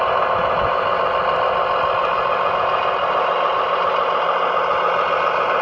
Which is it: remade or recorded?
recorded